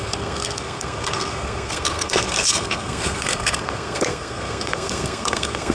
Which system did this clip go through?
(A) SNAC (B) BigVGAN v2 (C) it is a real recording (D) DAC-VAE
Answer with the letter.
A